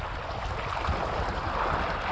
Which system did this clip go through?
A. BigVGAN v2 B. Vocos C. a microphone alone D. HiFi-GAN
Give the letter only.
C